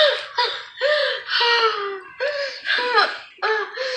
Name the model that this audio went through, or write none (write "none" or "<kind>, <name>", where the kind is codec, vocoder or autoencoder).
none